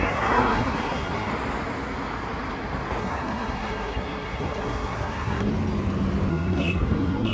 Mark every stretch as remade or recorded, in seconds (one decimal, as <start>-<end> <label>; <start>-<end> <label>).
0.0-1.3 remade; 1.3-3.0 recorded; 3.0-5.5 remade; 5.5-6.3 recorded; 6.3-7.3 remade